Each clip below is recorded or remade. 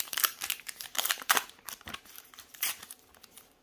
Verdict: remade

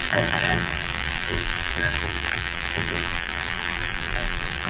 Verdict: remade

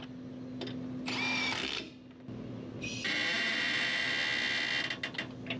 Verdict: recorded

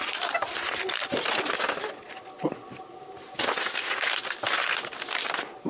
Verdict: recorded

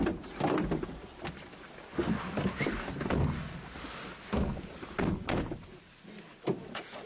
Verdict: recorded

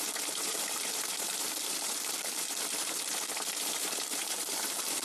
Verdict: remade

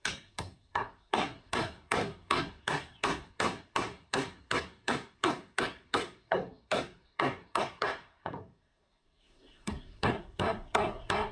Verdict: remade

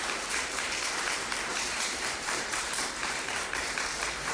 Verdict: remade